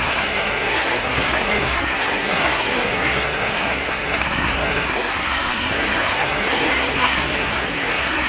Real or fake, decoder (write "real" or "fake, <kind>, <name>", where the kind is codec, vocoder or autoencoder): fake, codec, SNAC